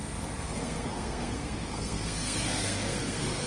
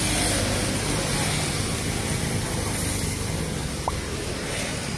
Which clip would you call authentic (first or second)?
second